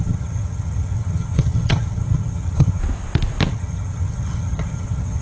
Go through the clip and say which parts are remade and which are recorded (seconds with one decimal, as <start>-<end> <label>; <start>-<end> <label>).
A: 0.0-2.8 remade; 2.8-3.5 recorded; 3.5-5.2 remade